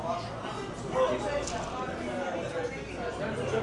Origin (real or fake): real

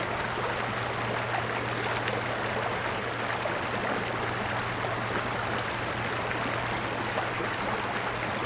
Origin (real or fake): real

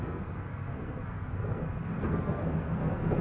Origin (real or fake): fake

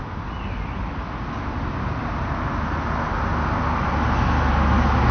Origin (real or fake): real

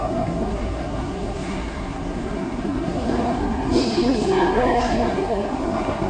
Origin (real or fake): fake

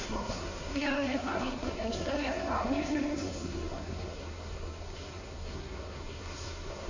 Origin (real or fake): fake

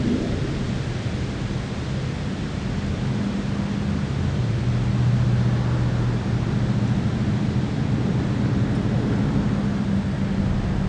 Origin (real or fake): real